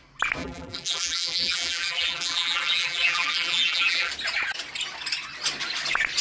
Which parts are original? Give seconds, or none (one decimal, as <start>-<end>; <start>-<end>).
0.0-0.4; 4.1-6.2